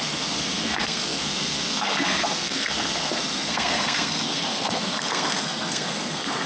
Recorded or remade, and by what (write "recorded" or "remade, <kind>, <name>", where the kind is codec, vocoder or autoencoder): remade, codec, SNAC